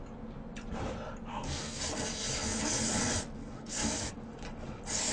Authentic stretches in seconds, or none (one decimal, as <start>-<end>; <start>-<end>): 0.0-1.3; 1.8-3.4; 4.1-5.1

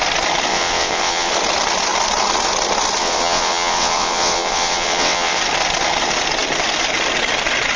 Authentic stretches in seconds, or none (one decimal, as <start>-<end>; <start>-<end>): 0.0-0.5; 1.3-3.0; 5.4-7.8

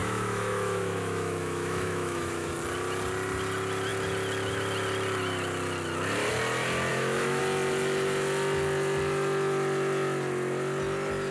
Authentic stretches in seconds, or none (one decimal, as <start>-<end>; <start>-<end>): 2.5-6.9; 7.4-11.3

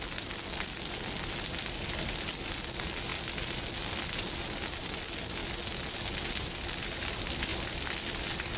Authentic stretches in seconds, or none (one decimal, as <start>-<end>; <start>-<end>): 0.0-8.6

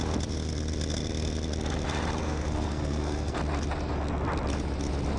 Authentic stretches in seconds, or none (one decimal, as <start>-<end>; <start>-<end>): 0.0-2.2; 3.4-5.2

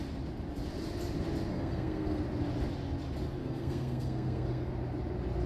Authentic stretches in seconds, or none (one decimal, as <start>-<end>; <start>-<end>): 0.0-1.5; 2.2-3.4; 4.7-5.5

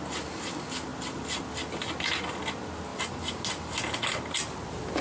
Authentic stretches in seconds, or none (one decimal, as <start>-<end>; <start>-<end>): 0.0-0.9; 1.4-5.0

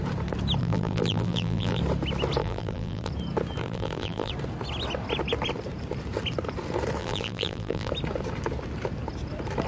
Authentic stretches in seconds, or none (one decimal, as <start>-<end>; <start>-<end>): 0.0-0.6; 1.8-2.4; 3.1-3.6; 4.3-7.0; 7.9-9.7